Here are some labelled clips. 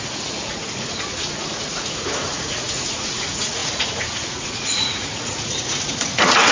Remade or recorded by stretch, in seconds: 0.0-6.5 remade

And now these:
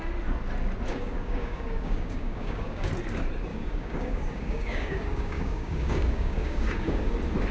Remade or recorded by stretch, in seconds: 0.0-0.9 recorded; 0.9-2.9 remade; 2.9-3.5 recorded; 3.5-7.1 remade; 7.1-7.5 recorded